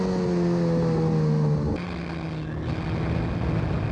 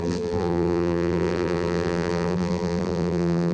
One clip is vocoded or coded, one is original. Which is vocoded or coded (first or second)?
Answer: second